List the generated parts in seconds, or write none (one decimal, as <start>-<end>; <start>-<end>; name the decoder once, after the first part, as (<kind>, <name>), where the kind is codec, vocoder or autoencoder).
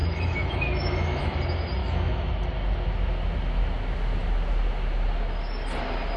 0.0-1.4 (autoencoder, DAC-VAE); 1.8-2.3